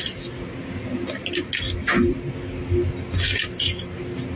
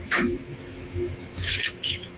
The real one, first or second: first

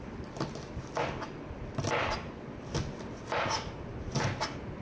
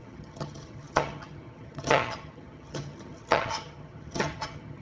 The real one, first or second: first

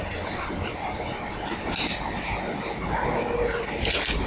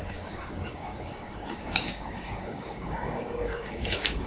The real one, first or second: first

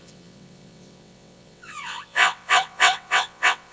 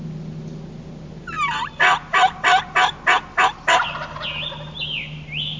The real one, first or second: second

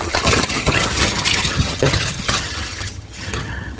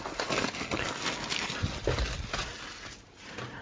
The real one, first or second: second